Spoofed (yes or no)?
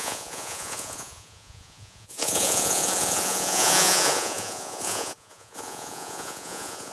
yes